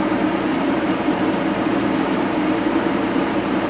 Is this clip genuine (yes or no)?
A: no